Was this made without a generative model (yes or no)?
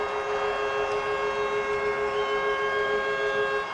yes